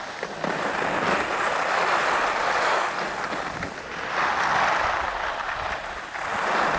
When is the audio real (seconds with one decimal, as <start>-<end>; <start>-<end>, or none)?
0.0-6.8